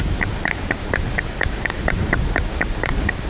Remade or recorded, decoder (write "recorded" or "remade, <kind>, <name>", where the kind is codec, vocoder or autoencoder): remade, vocoder, BigVGAN v2